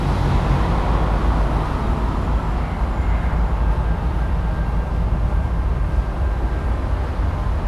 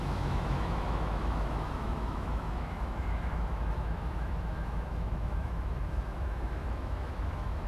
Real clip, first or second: first